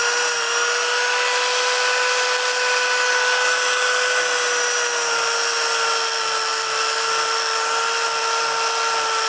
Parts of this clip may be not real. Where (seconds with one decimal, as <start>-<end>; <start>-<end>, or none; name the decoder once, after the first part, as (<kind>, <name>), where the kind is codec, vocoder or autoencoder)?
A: none